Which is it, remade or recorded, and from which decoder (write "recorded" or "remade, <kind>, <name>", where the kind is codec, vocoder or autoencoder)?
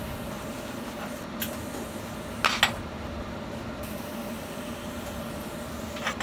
recorded